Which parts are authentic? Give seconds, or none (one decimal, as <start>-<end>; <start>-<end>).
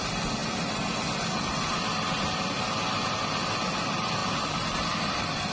0.0-5.5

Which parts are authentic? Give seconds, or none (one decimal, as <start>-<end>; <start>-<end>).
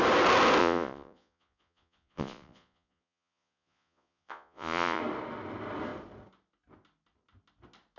0.0-0.6; 5.0-8.0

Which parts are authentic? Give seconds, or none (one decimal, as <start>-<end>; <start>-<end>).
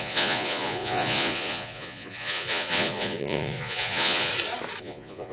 4.3-4.8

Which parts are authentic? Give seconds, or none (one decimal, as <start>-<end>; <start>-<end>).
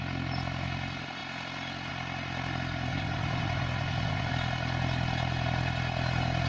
0.0-2.9; 4.3-6.5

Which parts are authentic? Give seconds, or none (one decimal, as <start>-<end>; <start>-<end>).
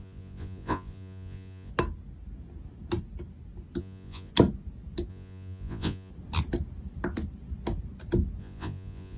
1.7-3.8; 4.3-5.1; 6.1-8.4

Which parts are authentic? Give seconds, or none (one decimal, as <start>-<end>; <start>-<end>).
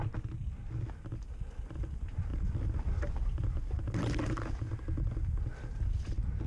0.0-6.5